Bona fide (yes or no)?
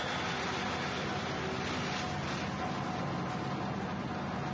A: yes